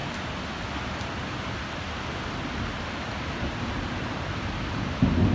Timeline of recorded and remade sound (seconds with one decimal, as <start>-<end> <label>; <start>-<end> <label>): 0.0-5.3 recorded